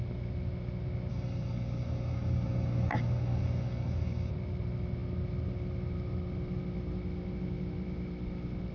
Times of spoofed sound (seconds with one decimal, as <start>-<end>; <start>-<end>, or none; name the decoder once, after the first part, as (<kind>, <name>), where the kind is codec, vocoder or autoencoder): 1.1-4.3 (codec, DAC)